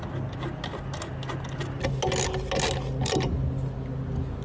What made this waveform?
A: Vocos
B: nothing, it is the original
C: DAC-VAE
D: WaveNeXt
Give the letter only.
B